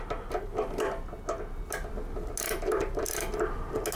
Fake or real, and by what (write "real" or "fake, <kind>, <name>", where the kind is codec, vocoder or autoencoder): real